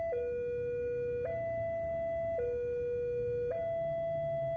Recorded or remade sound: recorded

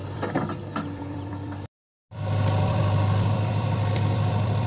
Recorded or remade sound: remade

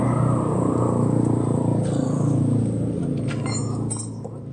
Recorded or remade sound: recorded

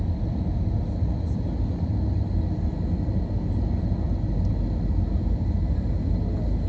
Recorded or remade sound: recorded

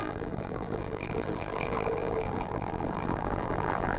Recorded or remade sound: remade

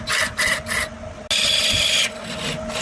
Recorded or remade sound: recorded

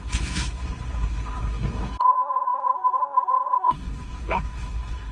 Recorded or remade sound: remade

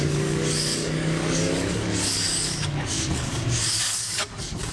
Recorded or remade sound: remade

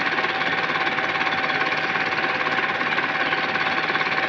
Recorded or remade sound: recorded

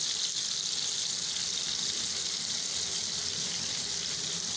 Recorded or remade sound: recorded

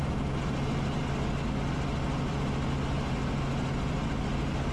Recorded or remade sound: recorded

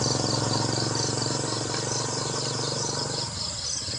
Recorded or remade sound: remade